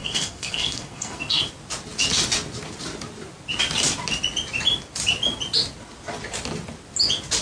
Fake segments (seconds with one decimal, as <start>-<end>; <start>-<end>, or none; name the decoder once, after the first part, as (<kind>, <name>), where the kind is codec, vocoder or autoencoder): 0.0-1.4 (codec, SNAC)